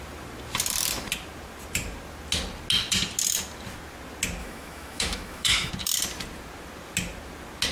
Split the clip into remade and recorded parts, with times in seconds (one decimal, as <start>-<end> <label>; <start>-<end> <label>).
0.0-4.4 recorded; 4.4-5.7 remade; 5.7-7.7 recorded